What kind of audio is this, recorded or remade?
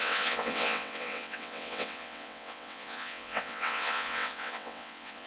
remade